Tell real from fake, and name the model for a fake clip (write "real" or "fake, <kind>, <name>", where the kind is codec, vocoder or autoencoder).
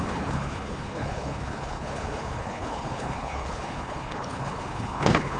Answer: fake, codec, HILCodec